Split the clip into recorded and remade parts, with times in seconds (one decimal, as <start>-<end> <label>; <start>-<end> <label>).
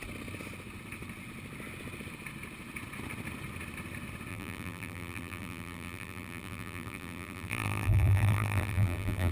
0.0-4.3 recorded; 4.3-9.3 remade